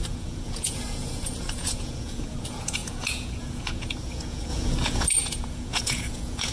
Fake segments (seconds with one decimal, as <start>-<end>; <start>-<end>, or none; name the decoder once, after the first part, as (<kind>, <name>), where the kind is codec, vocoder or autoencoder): 0.0-6.5 (vocoder, Vocos)